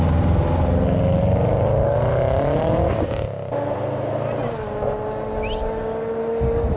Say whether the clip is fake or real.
real